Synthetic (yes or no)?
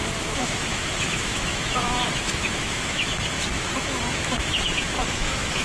yes